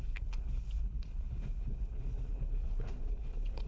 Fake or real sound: fake